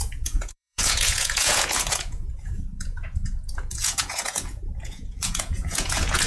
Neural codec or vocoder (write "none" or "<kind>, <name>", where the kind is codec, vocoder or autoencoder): vocoder, Vocos